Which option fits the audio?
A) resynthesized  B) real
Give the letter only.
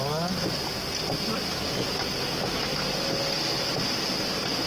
B